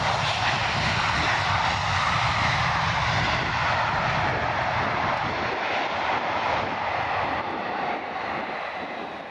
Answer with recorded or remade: recorded